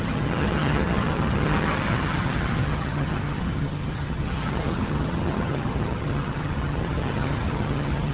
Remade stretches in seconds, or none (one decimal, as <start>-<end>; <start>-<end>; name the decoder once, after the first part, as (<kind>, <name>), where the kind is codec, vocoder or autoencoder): 0.0-8.1 (vocoder, HiFi-GAN)